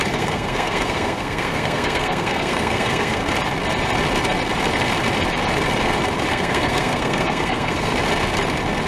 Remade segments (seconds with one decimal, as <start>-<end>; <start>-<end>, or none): 0.0-3.2; 6.3-7.9